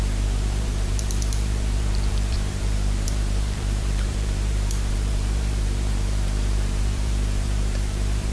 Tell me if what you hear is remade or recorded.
remade